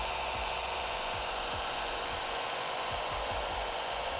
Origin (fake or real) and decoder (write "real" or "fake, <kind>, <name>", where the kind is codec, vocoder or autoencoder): fake, vocoder, Vocos